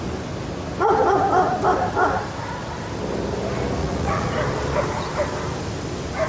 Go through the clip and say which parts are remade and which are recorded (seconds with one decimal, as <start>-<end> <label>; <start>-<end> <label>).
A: 0.0-3.8 recorded; 3.8-4.3 remade; 4.3-6.3 recorded